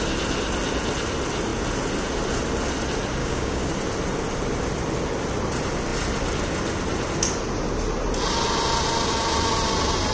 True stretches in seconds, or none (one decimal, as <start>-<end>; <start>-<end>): 0.0-3.2; 3.7-10.1